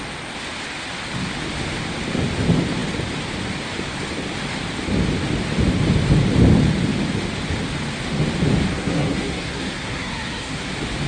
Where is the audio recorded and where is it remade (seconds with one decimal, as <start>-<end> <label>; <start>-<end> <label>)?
0.0-8.7 recorded; 8.7-10.7 remade; 10.7-11.1 recorded